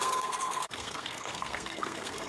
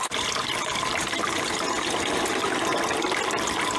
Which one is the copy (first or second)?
first